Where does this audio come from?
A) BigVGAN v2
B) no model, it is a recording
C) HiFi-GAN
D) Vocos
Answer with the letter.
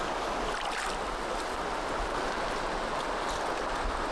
B